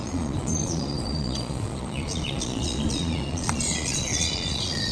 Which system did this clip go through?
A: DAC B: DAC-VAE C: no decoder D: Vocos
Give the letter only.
D